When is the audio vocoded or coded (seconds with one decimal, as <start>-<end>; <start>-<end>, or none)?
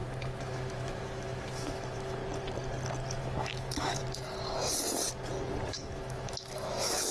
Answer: 0.0-2.2; 3.2-4.0; 5.7-7.1